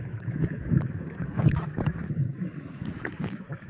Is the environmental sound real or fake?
fake